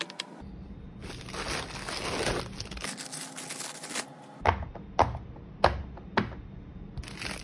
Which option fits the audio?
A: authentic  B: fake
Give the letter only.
A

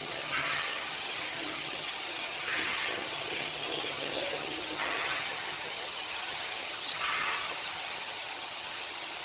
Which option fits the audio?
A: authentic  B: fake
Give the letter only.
B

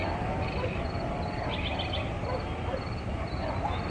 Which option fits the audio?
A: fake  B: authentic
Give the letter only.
A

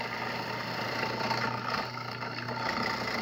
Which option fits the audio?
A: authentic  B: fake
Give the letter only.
A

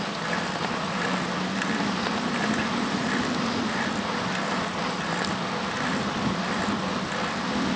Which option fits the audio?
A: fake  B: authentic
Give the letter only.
B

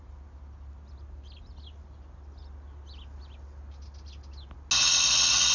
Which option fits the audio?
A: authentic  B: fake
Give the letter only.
A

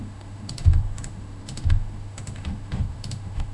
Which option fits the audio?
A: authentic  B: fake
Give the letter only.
B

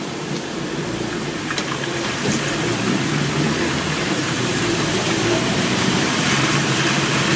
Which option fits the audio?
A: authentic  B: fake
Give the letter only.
B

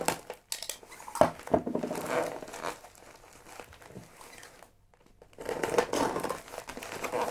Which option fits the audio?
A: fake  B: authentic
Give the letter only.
B